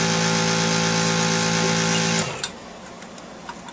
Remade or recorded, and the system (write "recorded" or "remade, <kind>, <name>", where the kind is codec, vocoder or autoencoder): recorded